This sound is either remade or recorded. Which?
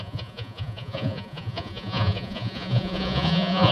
remade